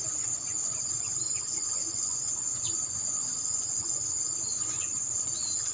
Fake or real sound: fake